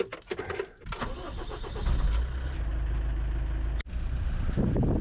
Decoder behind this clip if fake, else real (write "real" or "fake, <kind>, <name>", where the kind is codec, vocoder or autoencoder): real